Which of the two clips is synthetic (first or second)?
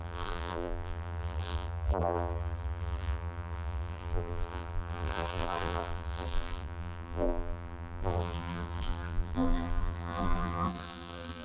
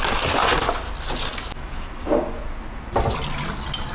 first